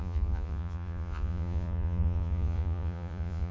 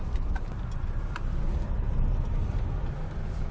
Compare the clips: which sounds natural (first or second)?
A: second